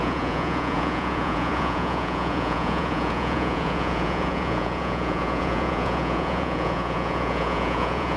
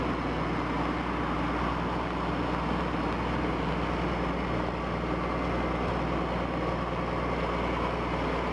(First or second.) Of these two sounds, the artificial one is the first